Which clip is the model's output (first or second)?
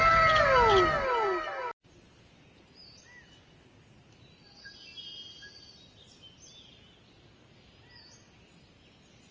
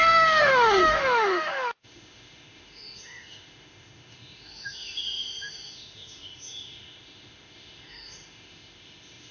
second